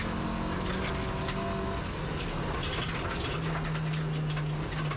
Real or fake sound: real